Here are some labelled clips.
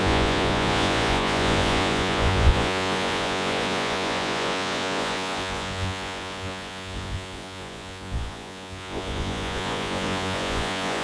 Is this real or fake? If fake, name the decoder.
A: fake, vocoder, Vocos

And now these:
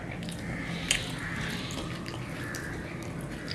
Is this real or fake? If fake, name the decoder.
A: real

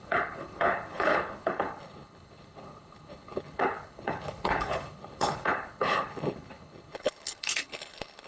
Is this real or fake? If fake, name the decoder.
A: fake, codec, HILCodec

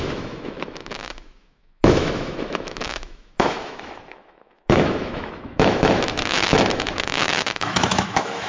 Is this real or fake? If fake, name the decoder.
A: fake, autoencoder, DAC-VAE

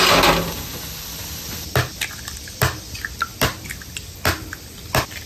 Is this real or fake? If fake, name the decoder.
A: real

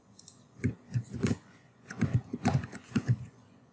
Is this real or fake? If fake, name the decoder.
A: fake, vocoder, Vocos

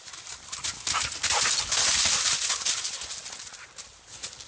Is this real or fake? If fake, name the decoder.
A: real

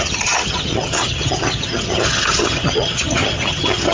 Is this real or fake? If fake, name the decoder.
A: fake, vocoder, HiFi-GAN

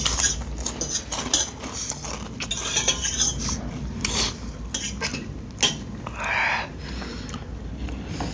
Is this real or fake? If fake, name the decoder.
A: real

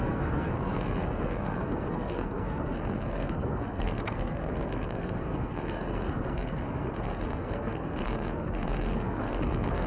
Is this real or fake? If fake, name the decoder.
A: fake, codec, SNAC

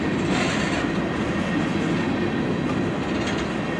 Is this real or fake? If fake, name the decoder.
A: real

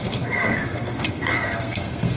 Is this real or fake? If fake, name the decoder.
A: fake, codec, SNAC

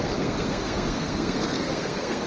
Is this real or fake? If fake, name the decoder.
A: fake, codec, SNAC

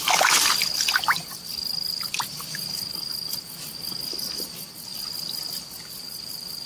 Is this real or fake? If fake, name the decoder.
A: real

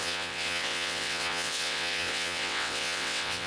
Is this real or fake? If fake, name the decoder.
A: fake, vocoder, WaveNeXt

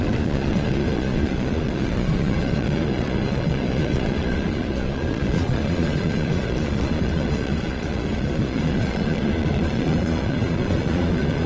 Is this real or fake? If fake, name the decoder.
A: fake, vocoder, Vocos